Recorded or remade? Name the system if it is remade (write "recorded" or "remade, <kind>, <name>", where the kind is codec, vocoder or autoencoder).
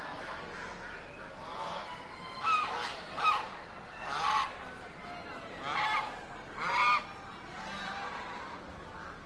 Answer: recorded